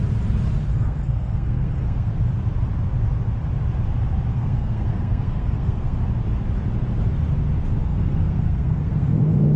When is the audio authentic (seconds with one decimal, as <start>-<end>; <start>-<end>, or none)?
0.0-0.6; 2.1-4.3; 6.0-7.8